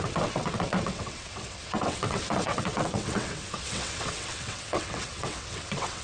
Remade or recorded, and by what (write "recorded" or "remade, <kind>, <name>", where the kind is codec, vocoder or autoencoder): remade, vocoder, WaveNeXt